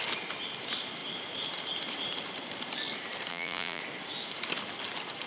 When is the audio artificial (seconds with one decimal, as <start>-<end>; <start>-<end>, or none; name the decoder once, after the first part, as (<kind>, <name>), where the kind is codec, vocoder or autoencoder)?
3.3-3.8 (vocoder, BigVGAN v2)